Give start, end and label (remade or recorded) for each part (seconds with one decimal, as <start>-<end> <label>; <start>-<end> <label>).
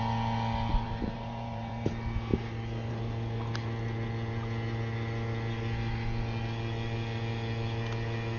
0.0-0.7 recorded; 0.7-1.9 remade; 1.9-8.4 recorded